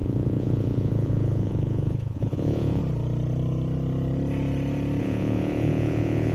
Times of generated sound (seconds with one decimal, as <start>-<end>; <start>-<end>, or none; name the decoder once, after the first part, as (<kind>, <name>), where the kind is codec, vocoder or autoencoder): 0.0-2.8 (vocoder, Vocos); 5.0-6.3